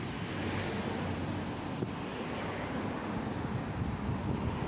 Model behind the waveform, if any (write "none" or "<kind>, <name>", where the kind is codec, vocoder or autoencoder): none